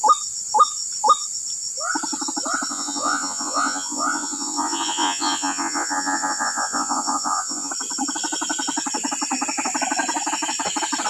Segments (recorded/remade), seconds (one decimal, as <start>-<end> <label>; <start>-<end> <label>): 0.0-2.7 recorded; 2.7-7.7 remade; 7.7-11.1 recorded